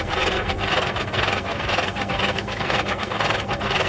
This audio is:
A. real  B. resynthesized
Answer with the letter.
B